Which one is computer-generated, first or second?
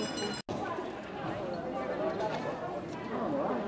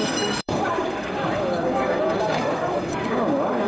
second